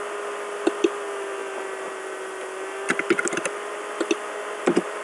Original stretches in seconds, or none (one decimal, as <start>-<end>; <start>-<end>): 0.0-5.0